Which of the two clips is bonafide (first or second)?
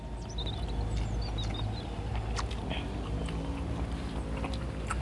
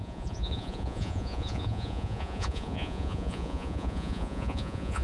first